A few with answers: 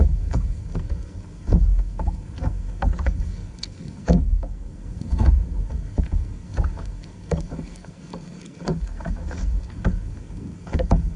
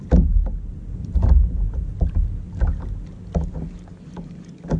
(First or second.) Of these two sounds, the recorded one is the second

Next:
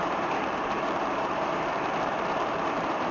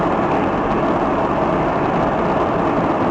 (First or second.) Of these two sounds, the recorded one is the second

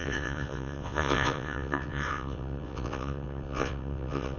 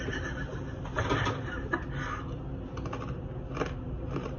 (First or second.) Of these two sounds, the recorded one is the second